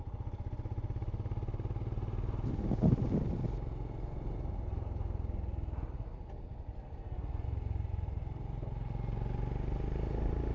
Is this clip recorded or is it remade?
recorded